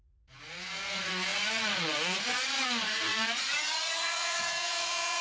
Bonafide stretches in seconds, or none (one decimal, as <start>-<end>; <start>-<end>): none